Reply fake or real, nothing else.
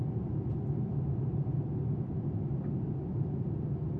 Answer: real